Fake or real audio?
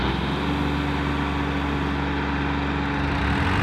real